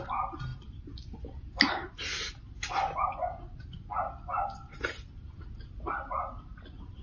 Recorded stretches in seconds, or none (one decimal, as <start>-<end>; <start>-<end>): 0.0-7.0